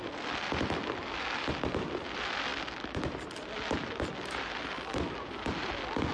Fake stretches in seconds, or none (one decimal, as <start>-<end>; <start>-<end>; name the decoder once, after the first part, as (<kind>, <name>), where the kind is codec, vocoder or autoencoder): none